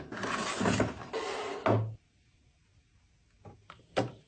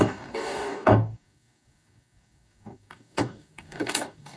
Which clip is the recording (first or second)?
first